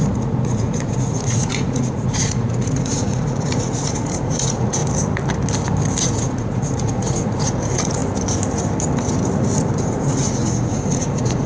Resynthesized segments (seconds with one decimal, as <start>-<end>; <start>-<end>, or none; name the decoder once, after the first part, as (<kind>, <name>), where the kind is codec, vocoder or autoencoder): 0.0-4.8 (vocoder, Vocos); 6.0-8.0; 9.8-11.5